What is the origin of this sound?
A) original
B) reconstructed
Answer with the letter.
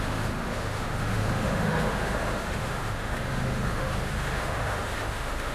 B